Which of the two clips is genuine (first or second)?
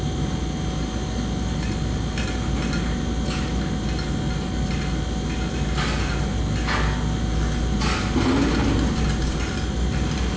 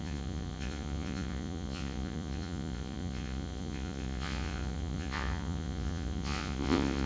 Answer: first